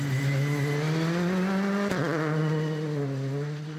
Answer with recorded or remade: recorded